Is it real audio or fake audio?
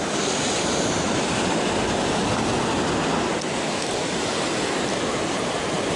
real